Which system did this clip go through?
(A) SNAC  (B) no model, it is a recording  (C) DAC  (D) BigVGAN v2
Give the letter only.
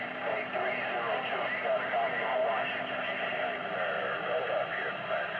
B